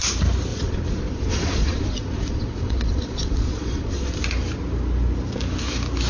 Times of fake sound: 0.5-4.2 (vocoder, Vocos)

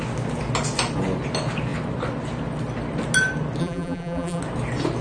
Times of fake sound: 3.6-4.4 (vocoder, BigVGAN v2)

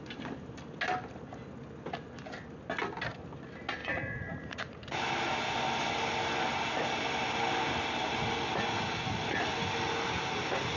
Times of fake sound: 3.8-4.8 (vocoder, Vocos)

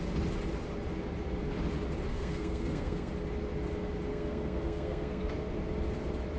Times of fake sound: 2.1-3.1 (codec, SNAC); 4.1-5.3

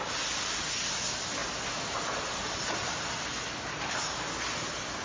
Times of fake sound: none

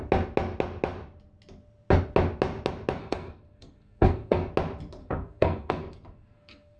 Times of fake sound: 3.0-4.5 (codec, SNAC); 5.0-6.8